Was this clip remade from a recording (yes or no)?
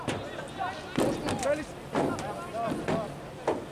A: no